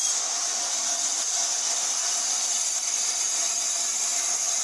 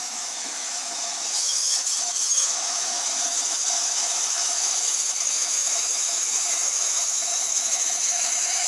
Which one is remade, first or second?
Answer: second